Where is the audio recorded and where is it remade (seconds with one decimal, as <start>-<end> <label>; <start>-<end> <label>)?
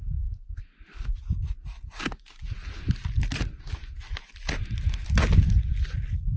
0.0-6.4 recorded